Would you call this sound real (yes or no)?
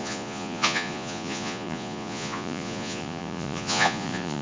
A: no